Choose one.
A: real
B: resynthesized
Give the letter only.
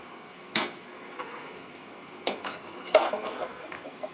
B